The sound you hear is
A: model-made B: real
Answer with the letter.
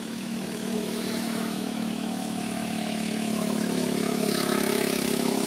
A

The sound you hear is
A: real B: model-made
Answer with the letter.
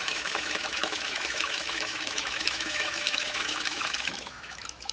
B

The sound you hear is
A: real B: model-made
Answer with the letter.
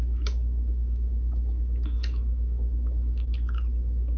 B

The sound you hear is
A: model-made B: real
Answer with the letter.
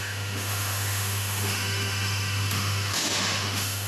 A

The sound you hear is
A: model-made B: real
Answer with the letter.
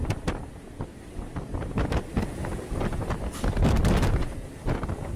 B